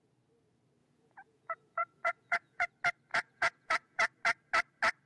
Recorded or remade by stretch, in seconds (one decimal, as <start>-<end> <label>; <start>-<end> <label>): 0.0-0.8 recorded; 0.8-2.7 remade; 2.7-3.1 recorded; 3.1-4.1 remade; 4.1-5.1 recorded